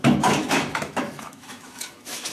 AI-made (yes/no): yes